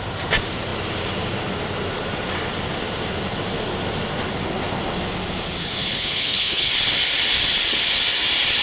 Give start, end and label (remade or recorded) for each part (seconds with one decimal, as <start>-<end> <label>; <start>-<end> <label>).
0.0-5.6 recorded; 5.6-6.7 remade; 6.7-8.6 recorded